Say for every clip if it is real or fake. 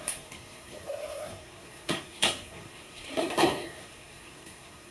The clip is fake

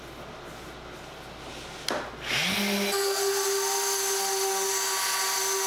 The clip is real